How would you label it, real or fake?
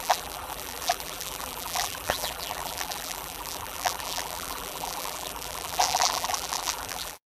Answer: fake